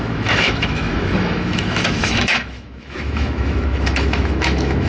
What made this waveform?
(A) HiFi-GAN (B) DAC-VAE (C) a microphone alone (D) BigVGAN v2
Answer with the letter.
B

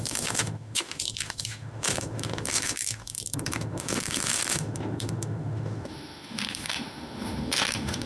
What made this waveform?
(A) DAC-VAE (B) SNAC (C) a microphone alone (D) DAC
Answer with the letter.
A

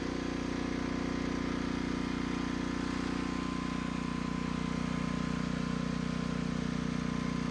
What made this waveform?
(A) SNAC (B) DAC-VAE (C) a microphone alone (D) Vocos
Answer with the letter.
C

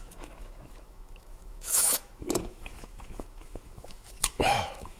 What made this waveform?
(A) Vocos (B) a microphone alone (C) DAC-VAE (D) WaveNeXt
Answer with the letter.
C